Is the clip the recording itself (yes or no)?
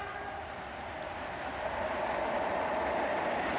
yes